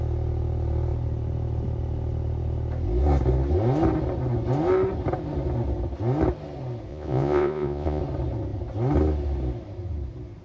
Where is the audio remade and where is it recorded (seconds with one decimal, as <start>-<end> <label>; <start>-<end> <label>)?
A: 0.0-6.9 recorded; 6.9-8.0 remade; 8.0-10.4 recorded